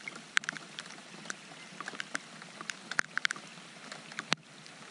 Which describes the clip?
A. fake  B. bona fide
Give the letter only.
B